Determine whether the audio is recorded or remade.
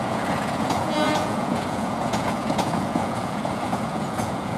remade